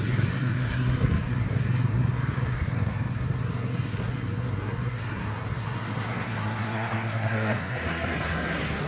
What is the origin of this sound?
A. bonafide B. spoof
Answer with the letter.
B